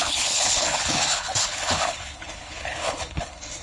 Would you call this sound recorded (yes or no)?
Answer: no